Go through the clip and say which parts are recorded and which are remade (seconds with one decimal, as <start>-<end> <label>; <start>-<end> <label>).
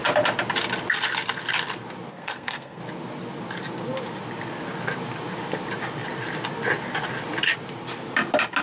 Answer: 0.0-2.1 recorded; 2.1-2.8 remade; 2.8-8.6 recorded